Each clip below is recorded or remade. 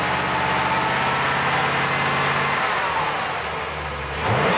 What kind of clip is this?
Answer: recorded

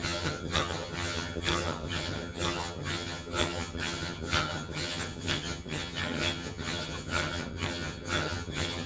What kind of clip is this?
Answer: remade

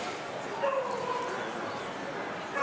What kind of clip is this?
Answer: recorded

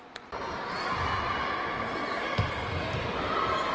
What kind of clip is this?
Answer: recorded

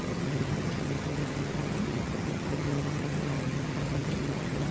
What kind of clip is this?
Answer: remade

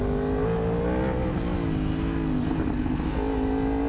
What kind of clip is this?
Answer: recorded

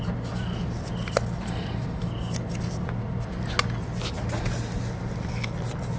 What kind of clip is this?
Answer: recorded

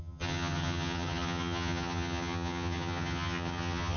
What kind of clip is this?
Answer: remade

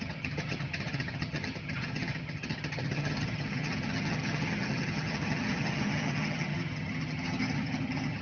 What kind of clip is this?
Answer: remade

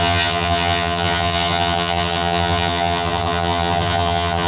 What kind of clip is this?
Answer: remade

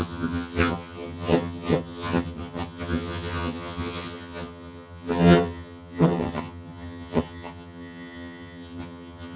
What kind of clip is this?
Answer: remade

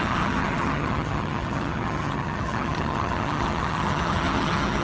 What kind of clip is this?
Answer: remade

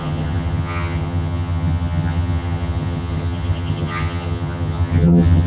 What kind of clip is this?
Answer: remade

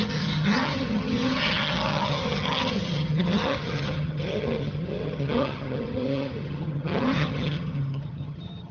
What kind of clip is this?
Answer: remade